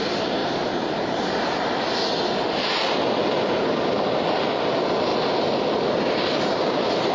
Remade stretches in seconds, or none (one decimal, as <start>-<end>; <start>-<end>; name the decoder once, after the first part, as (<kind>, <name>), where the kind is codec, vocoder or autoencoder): 0.4-1.8 (vocoder, BigVGAN v2); 5.1-7.1